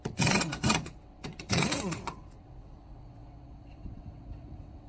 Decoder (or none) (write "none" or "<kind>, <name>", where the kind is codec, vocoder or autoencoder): vocoder, WaveNeXt